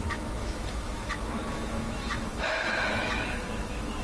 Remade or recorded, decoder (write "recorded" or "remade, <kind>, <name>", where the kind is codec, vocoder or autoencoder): remade, autoencoder, DAC-VAE